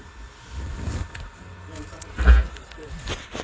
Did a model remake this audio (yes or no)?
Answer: no